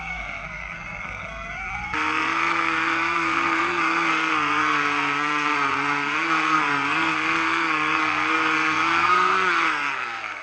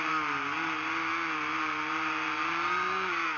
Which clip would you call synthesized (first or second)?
first